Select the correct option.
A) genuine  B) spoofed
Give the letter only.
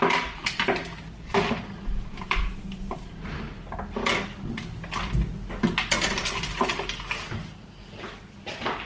A